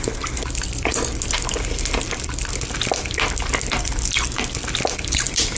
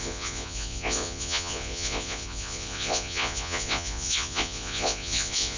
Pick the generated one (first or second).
second